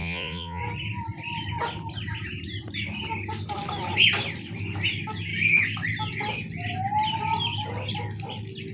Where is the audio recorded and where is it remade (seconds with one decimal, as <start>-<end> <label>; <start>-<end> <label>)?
0.0-0.6 remade; 0.6-8.7 recorded